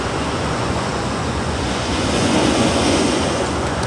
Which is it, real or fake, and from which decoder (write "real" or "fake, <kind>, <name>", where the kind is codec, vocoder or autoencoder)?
fake, vocoder, Vocos